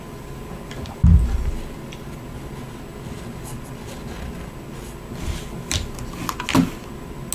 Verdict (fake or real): real